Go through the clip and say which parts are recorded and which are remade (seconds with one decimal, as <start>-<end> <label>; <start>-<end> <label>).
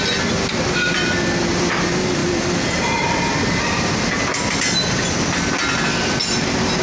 0.0-2.2 recorded; 2.2-4.1 remade; 4.1-6.8 recorded